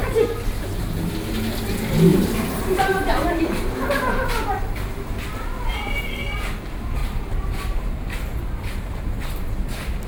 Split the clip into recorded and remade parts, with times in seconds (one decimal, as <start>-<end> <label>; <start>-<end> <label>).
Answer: 0.0-0.8 remade; 0.8-2.1 recorded; 2.1-3.9 remade; 3.9-7.0 recorded; 7.0-10.1 remade